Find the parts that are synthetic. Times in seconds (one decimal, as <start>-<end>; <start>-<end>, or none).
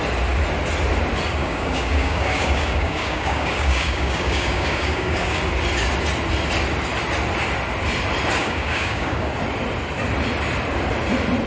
1.4-5.4; 8.4-9.3